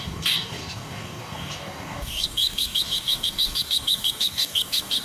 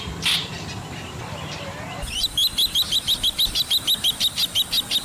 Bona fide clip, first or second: second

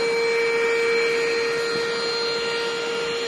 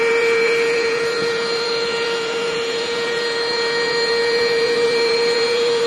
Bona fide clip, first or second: first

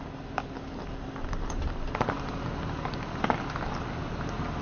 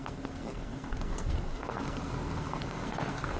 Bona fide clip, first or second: first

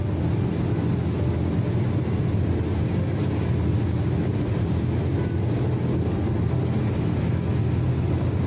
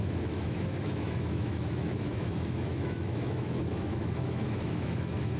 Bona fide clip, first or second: first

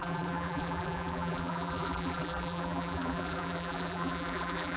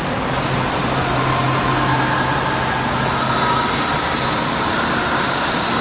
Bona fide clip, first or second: second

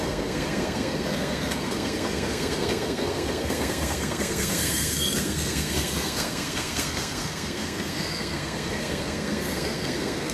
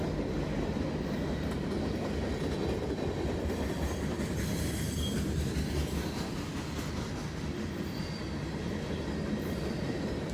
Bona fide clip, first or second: second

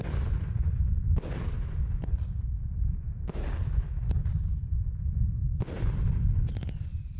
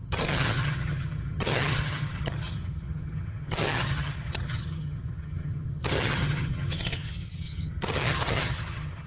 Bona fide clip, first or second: first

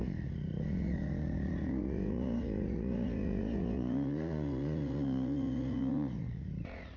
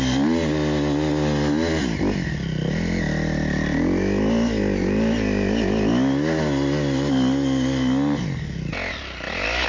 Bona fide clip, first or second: second